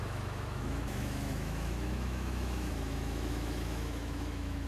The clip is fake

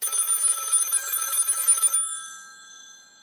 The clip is fake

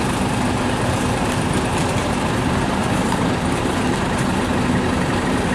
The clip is real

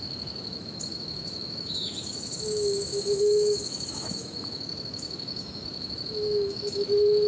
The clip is fake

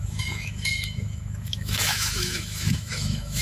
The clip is fake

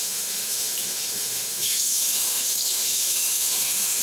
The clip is fake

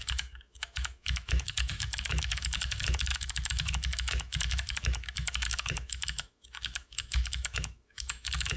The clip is fake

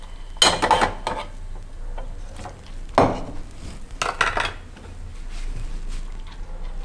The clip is real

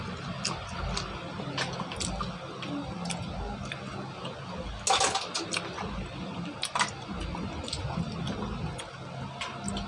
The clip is real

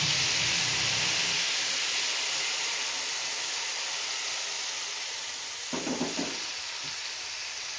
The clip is real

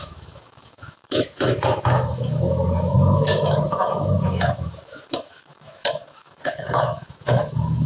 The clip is fake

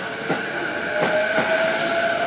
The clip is real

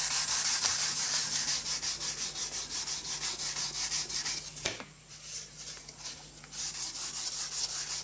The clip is real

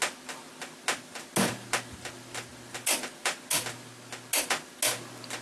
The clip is real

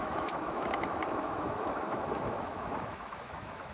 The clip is fake